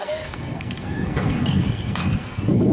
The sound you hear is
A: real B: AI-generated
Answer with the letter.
B